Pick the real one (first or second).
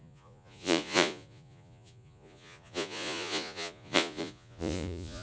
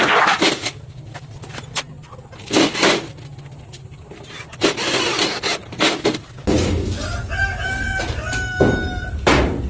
second